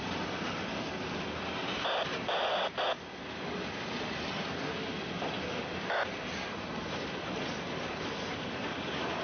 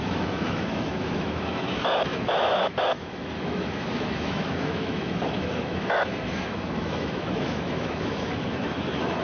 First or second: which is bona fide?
first